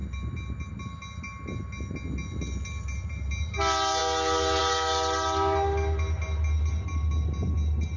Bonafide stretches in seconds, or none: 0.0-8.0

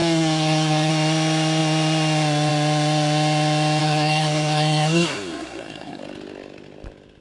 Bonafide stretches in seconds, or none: 0.9-3.8; 6.0-7.2

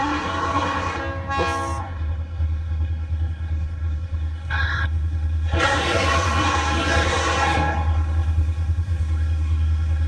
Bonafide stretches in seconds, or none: 1.0-1.8

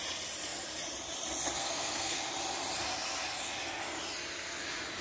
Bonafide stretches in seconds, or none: 0.0-1.6; 2.2-5.0

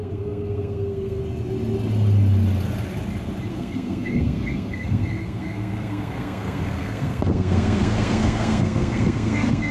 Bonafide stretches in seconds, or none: 1.2-3.5